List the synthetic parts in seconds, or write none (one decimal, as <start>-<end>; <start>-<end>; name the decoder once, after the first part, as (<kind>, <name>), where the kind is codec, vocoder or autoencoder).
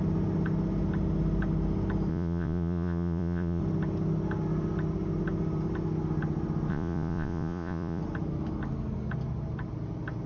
2.1-3.6 (vocoder, Vocos); 6.7-8.0